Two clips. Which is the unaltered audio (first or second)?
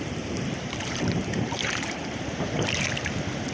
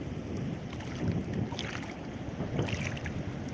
second